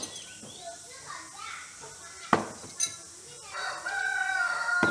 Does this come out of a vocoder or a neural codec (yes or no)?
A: no